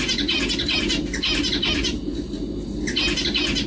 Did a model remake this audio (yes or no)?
yes